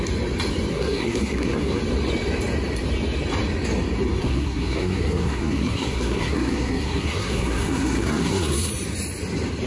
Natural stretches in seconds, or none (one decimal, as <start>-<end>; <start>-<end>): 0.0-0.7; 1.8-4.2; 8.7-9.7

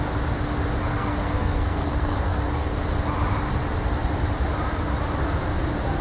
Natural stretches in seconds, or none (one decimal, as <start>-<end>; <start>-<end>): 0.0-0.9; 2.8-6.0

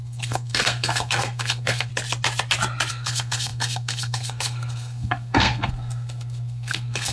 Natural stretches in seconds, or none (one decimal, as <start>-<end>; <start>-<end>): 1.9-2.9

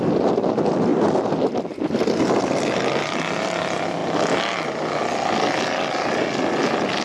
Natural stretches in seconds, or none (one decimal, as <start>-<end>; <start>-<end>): 0.0-7.0